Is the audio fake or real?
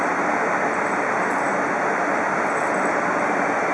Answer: real